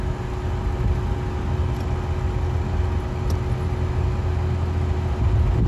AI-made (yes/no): no